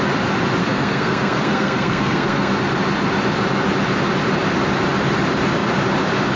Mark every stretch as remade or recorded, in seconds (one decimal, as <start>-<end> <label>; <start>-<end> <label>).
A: 0.0-0.6 recorded; 0.6-2.5 remade; 2.5-6.4 recorded